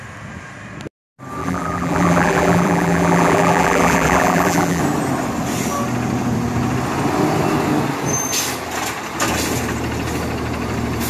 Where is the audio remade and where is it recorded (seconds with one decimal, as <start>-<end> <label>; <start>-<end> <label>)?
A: 0.0-1.4 recorded; 1.4-4.8 remade; 4.8-11.1 recorded